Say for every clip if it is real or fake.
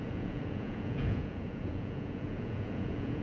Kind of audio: fake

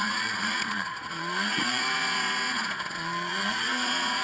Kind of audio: fake